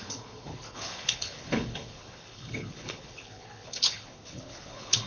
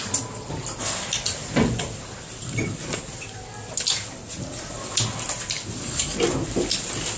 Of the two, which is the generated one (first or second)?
first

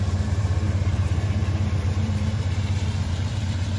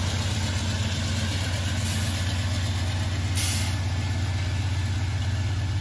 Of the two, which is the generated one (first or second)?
first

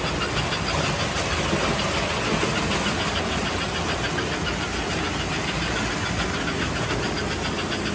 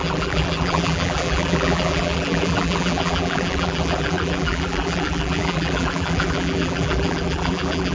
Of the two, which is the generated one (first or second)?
second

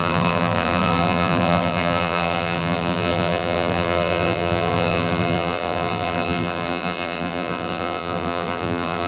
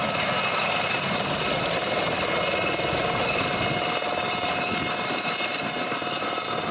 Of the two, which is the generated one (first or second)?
first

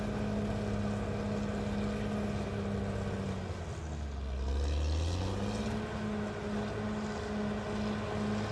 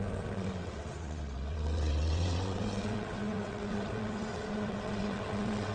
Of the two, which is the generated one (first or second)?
second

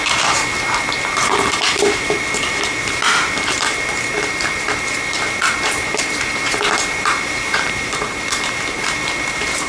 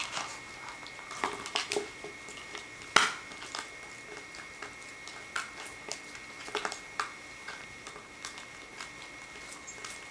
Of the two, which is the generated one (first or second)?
first